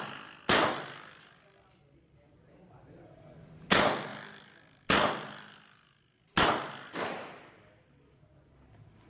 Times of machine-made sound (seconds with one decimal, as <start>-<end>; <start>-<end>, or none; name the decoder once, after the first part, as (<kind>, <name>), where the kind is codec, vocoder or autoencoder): none